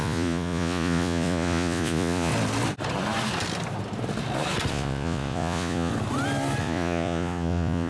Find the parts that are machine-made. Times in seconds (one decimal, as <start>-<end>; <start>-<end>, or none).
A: 0.0-2.3; 4.7-5.9; 6.6-7.9